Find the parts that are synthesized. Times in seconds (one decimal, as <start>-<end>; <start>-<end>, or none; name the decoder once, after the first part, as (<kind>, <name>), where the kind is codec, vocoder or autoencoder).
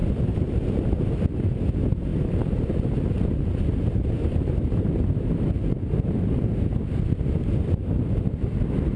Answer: 0.0-1.0 (vocoder, BigVGAN v2); 2.1-7.0